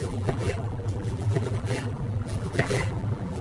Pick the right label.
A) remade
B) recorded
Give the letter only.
A